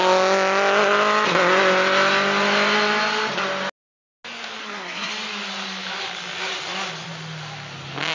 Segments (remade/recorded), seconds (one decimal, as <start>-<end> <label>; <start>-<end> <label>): 0.0-4.6 recorded; 4.6-5.1 remade; 5.1-8.1 recorded